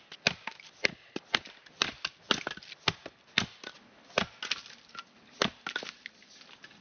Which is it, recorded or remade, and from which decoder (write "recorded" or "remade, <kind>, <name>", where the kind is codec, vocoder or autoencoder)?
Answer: recorded